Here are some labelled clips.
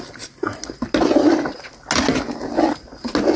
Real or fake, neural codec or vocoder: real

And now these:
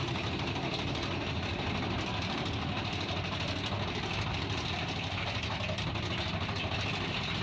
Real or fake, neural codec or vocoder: real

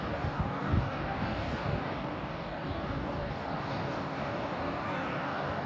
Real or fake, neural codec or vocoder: fake, codec, DAC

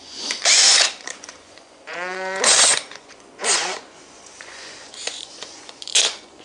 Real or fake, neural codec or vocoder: fake, vocoder, Vocos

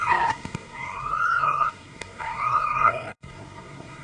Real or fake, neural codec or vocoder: fake, codec, SNAC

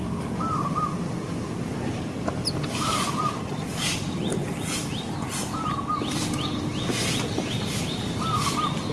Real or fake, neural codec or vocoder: real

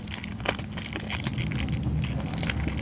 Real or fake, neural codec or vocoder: real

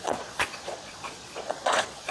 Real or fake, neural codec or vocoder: fake, vocoder, Vocos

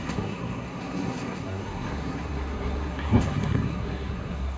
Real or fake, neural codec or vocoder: fake, codec, SNAC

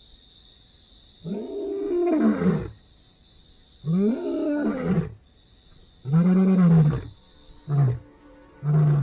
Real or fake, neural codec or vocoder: real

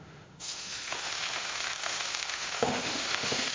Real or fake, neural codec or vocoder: fake, autoencoder, DAC-VAE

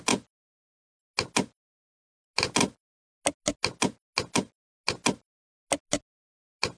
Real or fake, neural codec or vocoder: real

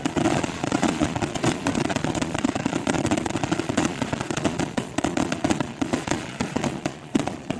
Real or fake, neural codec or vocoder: fake, vocoder, Vocos